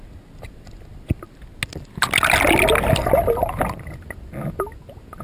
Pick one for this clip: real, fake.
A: real